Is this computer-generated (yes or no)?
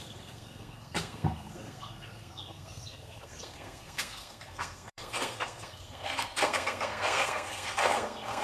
yes